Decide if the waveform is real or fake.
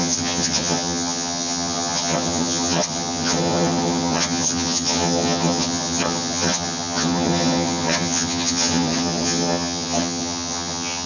fake